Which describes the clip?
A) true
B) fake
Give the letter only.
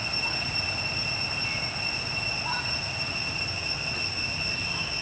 A